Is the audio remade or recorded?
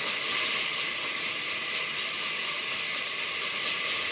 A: remade